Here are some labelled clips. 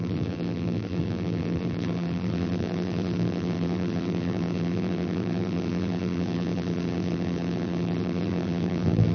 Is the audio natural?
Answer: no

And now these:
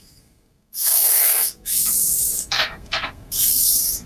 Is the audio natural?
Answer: no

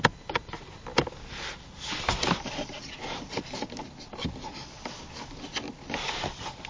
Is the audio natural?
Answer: yes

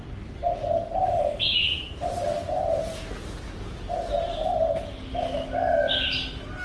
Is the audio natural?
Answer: yes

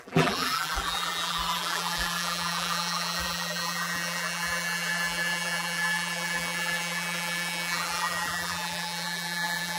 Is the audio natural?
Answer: no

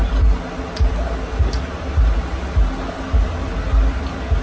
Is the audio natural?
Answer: yes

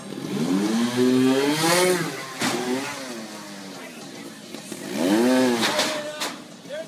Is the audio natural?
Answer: yes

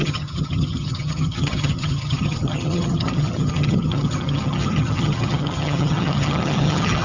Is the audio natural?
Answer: no